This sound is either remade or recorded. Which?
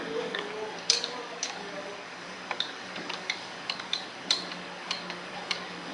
remade